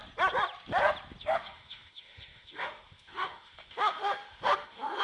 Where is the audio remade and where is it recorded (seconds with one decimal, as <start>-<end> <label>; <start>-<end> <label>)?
0.0-1.2 recorded; 1.2-5.0 remade